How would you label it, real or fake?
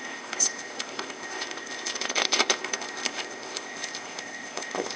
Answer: fake